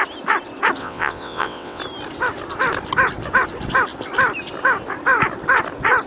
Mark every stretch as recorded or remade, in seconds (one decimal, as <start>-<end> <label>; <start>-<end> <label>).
0.0-0.8 recorded; 0.8-1.8 remade; 1.8-6.1 recorded